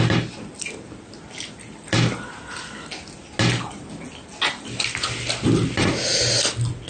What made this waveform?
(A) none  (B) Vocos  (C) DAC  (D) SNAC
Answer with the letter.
A